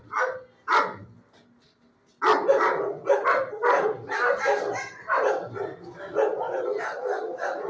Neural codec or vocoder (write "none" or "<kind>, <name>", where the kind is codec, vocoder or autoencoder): none